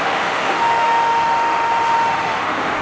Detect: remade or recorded remade